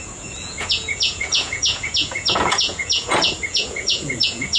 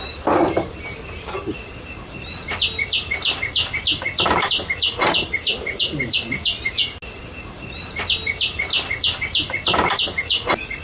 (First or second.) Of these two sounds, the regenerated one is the first